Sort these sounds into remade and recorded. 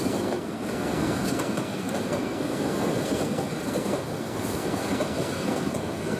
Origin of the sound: remade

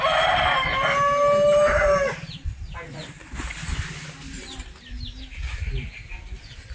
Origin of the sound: recorded